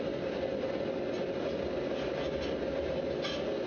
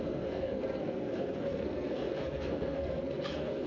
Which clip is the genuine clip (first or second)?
first